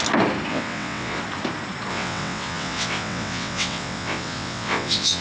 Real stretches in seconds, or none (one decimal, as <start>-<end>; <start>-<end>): 0.0-0.5; 1.2-1.9